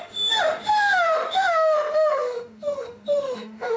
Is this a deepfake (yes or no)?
yes